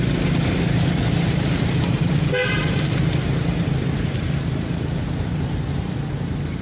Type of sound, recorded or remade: remade